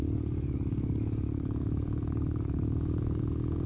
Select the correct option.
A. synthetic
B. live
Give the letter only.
A